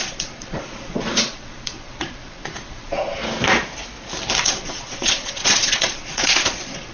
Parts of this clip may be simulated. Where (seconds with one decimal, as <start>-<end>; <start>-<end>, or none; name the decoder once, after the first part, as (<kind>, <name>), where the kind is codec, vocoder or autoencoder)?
0.0-3.2 (vocoder, Vocos); 4.4-6.9